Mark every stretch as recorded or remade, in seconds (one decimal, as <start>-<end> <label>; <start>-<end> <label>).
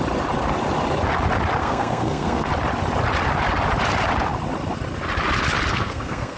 0.0-1.6 recorded; 1.6-2.5 remade; 2.5-5.7 recorded; 5.7-6.4 remade